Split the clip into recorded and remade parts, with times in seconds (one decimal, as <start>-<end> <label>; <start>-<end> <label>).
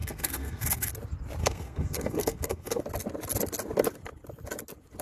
0.0-0.9 remade; 0.9-1.4 recorded; 1.4-2.8 remade; 2.8-5.0 recorded